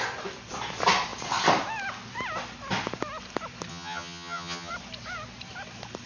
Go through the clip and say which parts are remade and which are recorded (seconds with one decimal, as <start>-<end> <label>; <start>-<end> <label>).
0.0-3.7 recorded; 3.7-4.7 remade; 4.7-6.1 recorded